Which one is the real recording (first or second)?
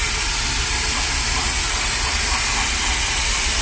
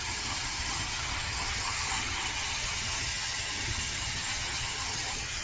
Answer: first